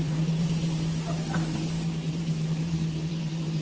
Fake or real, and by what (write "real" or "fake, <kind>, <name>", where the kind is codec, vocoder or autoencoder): fake, vocoder, BigVGAN v2